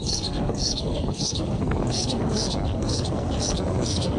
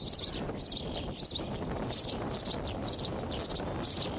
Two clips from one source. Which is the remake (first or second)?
first